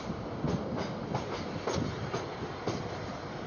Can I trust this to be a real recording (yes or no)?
yes